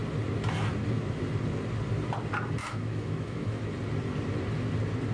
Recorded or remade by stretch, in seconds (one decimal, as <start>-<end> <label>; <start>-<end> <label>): 0.0-2.6 recorded; 2.6-3.6 remade; 3.6-5.1 recorded